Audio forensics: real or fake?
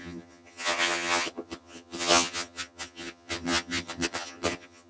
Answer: fake